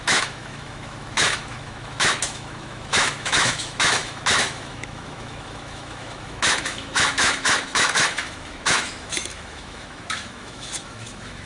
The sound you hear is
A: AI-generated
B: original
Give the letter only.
A